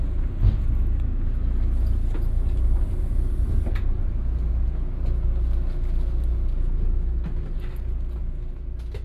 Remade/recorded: recorded